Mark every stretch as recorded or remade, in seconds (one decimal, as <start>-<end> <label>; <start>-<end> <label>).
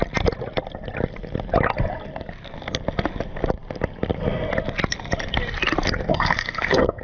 0.0-6.1 recorded; 6.1-7.0 remade